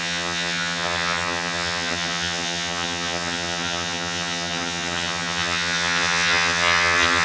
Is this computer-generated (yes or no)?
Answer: yes